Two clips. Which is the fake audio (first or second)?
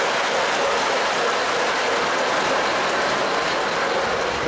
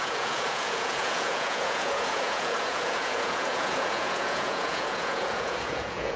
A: second